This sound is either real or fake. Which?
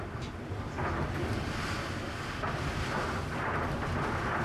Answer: real